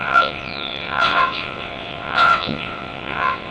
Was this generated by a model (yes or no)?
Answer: yes